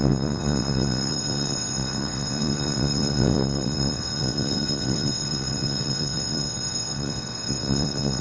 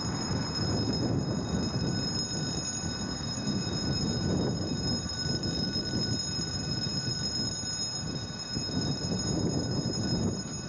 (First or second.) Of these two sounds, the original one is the second